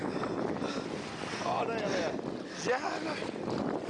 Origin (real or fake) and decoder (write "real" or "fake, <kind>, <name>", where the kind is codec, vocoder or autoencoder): real